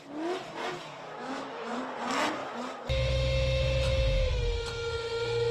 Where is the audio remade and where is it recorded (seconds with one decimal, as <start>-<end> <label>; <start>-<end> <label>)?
0.0-1.2 recorded; 1.2-1.8 remade; 1.8-5.5 recorded